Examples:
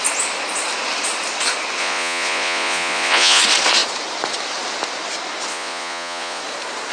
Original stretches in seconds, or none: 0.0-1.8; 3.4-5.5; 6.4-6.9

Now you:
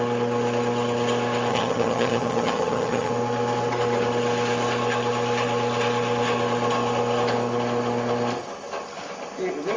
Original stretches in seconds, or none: 0.0-1.5; 3.1-9.8

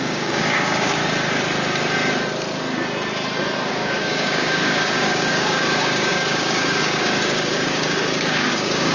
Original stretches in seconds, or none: 1.0-3.7

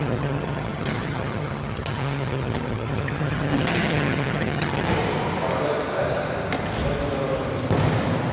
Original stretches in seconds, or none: 4.9-8.3